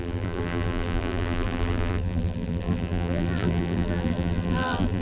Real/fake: fake